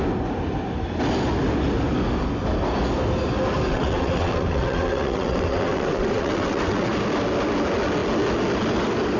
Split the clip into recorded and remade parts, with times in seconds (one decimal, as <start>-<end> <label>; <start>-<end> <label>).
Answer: 0.0-3.7 recorded; 3.7-6.9 remade; 6.9-9.2 recorded